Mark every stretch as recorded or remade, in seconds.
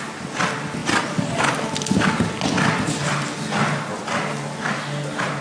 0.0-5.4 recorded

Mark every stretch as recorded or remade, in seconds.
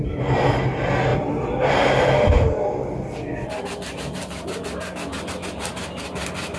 0.0-6.6 recorded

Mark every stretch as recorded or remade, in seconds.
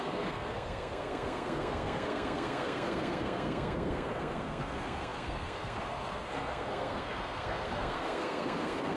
0.0-9.0 remade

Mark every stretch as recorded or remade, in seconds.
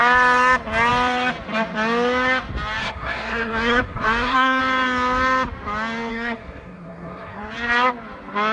0.0-2.8 recorded; 2.8-4.6 remade; 4.6-6.1 recorded; 6.1-7.4 remade; 7.4-8.5 recorded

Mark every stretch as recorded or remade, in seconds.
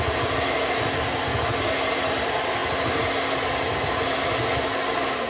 0.0-5.3 recorded